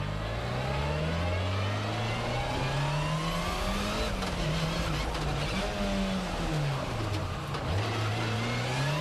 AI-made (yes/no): no